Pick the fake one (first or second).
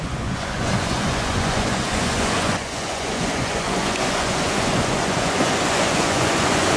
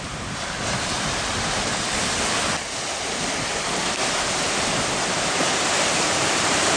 first